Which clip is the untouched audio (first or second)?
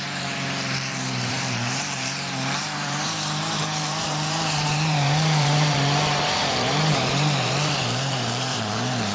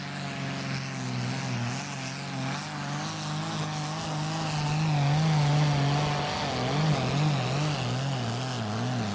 second